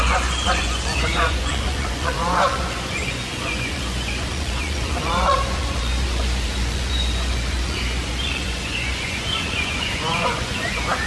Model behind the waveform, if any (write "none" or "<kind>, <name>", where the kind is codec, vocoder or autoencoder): vocoder, Vocos